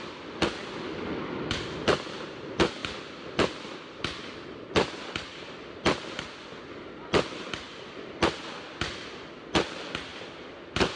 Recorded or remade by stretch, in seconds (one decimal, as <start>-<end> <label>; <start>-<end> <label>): 0.0-2.8 recorded; 2.8-4.0 remade; 4.0-10.1 recorded; 10.1-11.0 remade